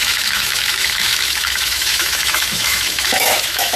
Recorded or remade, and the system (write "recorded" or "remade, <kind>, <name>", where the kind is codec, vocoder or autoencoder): remade, autoencoder, DAC-VAE